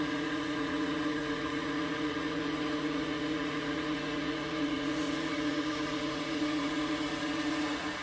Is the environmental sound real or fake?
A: fake